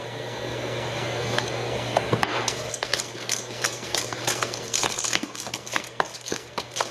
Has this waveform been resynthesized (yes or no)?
yes